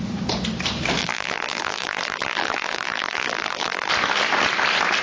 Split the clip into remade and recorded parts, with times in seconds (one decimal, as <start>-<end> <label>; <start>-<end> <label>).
0.0-1.0 recorded; 1.0-3.9 remade; 3.9-5.0 recorded